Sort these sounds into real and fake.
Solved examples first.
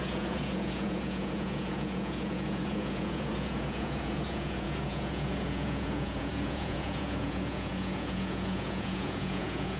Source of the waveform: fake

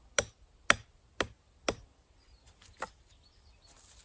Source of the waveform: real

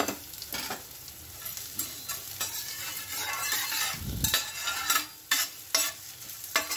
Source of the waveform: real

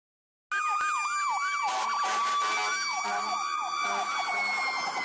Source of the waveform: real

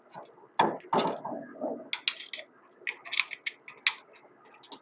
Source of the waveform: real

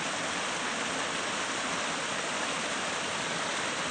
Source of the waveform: fake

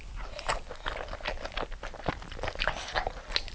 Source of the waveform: real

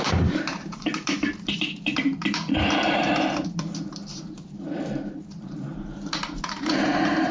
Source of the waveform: fake